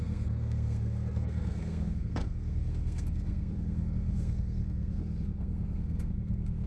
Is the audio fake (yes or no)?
yes